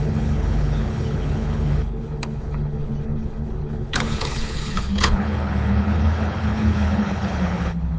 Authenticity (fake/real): fake